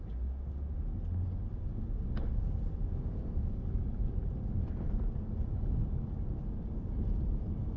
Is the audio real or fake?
real